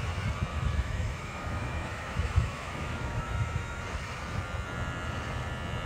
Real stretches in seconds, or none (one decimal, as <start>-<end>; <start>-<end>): 0.0-0.5; 3.8-5.9

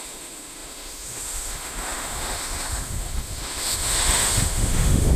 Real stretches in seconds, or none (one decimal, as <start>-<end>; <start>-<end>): none

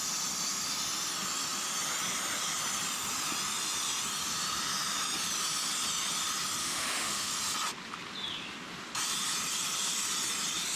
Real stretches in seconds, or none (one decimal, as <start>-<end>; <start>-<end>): 0.0-6.6; 7.3-10.8

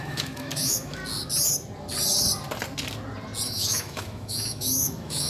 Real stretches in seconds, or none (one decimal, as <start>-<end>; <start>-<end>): 1.0-3.5

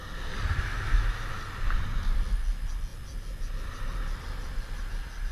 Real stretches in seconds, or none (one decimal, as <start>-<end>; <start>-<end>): 0.0-0.9; 1.4-5.3

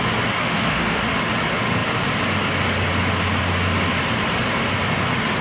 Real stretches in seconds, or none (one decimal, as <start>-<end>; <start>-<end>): 0.0-0.4; 1.0-5.4